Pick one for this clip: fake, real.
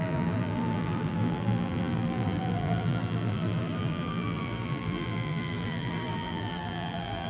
fake